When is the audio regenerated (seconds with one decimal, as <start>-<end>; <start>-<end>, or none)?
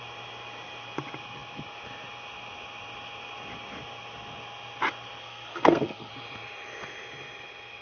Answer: 5.2-6.1